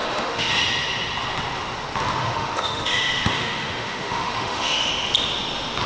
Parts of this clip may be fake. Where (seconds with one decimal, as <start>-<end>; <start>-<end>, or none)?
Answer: 0.0-0.5; 2.2-4.9